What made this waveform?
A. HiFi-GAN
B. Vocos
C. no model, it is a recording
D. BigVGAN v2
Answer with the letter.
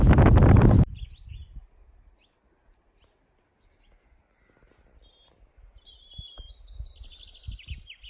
C